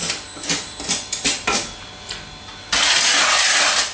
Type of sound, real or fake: real